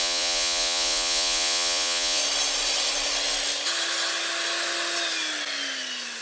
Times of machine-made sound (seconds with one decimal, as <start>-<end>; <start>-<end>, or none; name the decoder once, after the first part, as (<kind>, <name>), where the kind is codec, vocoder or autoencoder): 0.0-2.2 (vocoder, Vocos)